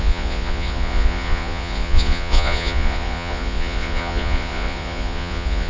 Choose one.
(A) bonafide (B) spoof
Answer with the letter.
B